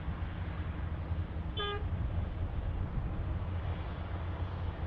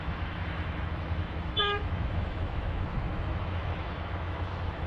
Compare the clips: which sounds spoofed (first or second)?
second